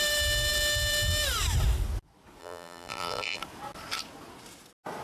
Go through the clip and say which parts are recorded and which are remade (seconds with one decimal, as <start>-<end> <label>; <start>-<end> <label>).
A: 0.0-2.4 recorded; 2.4-3.4 remade; 3.4-5.0 recorded